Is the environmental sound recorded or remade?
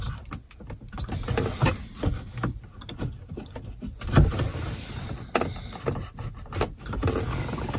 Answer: recorded